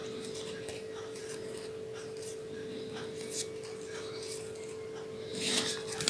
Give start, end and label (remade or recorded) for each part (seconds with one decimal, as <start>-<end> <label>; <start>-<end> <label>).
0.0-6.1 recorded